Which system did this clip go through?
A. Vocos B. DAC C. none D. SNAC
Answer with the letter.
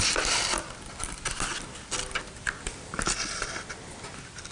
C